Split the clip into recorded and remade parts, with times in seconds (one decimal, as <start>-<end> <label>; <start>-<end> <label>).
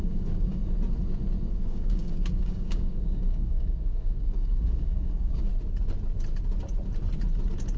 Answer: 0.0-0.6 remade; 0.6-1.5 recorded; 1.5-5.5 remade; 5.5-7.8 recorded